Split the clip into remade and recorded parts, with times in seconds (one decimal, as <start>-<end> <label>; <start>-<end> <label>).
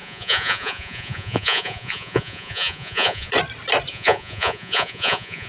0.0-3.3 remade; 3.3-3.9 recorded; 3.9-5.5 remade